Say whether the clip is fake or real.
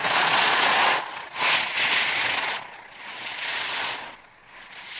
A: fake